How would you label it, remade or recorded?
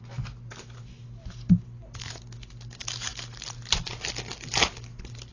recorded